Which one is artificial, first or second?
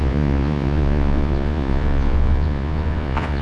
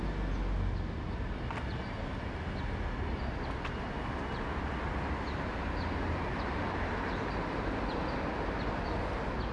first